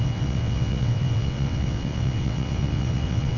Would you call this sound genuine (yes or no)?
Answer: no